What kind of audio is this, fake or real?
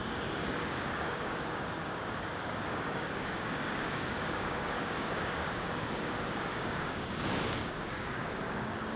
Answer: fake